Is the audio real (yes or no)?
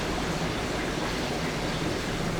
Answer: yes